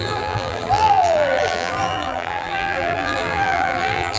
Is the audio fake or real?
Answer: fake